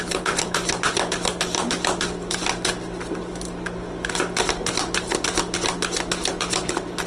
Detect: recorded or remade recorded